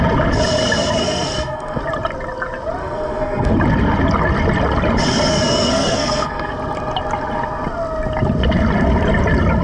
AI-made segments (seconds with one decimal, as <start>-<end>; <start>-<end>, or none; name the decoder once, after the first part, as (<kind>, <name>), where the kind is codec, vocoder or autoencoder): 1.0-1.8 (codec, SNAC); 2.8-3.5; 5.3-6.5